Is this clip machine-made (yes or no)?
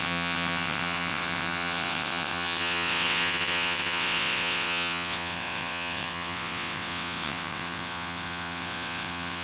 yes